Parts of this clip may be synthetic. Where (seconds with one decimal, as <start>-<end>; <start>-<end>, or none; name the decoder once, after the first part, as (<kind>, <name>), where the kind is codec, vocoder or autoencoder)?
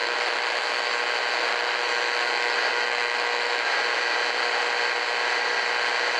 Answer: 0.0-0.9 (autoencoder, DAC-VAE); 1.5-3.8